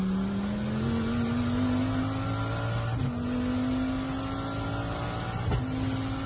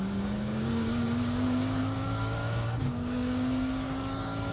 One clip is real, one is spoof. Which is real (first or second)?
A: first